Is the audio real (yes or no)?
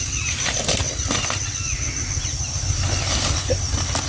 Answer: yes